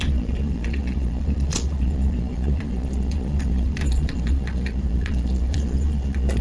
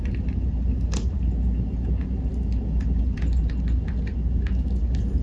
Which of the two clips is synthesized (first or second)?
first